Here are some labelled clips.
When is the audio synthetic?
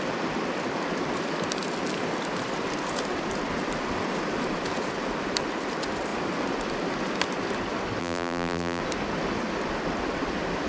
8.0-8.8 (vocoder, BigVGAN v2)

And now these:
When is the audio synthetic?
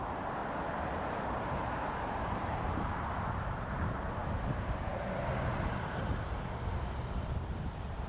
0.0-0.4 (vocoder, BigVGAN v2); 1.0-6.1; 6.7-8.1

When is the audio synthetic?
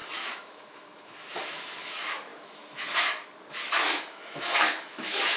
0.0-5.4 (autoencoder, DAC-VAE)